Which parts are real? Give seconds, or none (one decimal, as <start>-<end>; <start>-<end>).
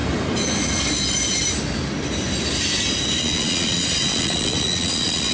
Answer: 0.0-3.2